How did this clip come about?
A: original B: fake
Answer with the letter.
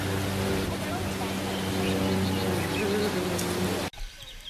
A